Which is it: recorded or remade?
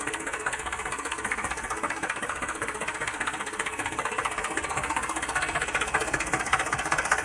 remade